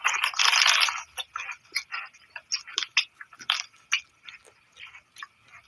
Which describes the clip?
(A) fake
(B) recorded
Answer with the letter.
B